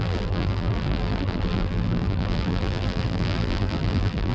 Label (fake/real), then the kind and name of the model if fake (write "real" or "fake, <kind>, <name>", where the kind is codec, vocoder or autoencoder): fake, vocoder, BigVGAN v2